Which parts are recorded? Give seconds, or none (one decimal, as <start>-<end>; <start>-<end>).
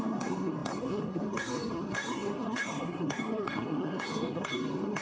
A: none